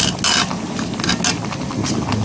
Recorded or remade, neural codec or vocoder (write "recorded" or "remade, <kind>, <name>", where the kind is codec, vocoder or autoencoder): recorded